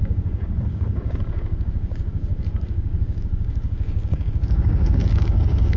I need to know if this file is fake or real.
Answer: fake